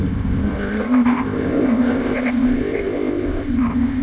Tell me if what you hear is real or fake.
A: fake